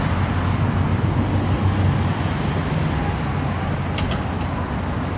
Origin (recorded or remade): recorded